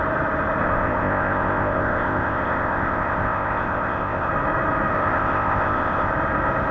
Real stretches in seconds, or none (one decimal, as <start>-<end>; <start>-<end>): 0.0-0.6; 4.3-4.9; 6.1-6.7